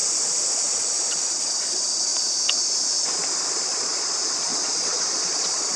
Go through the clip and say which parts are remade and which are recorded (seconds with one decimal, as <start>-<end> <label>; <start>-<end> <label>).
0.0-1.4 recorded; 1.4-2.1 remade; 2.1-3.5 recorded; 3.5-5.8 remade